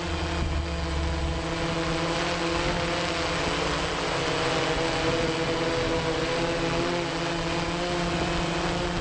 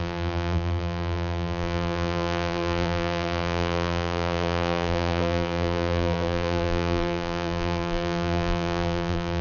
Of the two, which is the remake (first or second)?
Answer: second